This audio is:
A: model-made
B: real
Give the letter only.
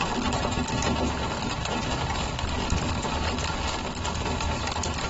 B